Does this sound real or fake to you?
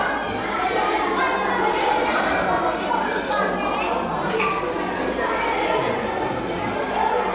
real